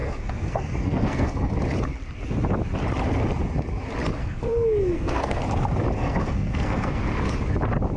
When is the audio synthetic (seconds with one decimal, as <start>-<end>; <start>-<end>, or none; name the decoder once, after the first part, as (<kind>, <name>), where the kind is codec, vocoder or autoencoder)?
0.0-1.5 (codec, SNAC); 4.2-5.4; 6.0-7.0